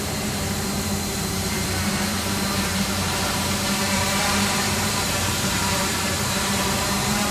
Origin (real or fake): fake